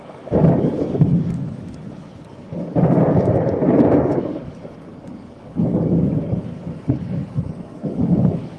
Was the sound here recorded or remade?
remade